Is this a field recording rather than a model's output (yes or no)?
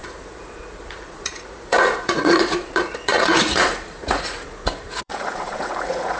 no